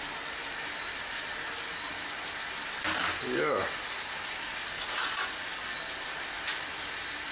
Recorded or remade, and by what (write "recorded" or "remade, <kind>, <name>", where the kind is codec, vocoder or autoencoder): recorded